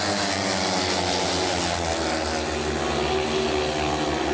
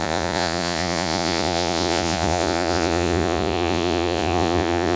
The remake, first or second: second